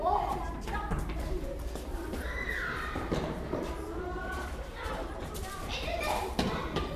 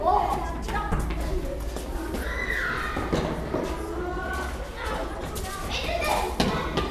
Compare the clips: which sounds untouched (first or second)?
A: second